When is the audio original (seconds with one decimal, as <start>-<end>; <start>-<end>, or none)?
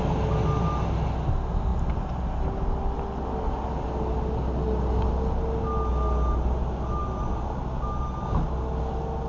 0.0-9.3